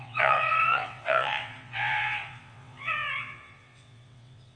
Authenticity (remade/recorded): remade